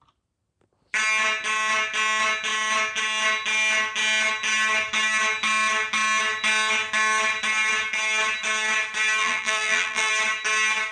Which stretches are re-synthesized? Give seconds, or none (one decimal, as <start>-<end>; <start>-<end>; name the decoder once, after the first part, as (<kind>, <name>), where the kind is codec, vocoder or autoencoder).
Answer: 9.2-10.1 (vocoder, BigVGAN v2)